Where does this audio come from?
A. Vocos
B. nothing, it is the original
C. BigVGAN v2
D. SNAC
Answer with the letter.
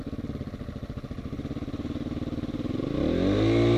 B